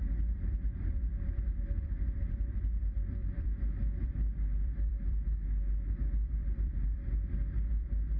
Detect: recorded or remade remade